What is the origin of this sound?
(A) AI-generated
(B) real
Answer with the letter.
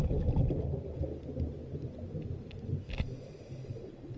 B